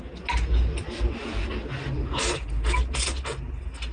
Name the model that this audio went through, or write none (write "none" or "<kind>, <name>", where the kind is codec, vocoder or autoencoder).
none